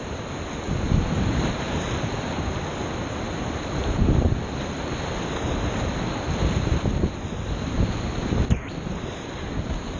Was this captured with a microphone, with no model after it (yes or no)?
yes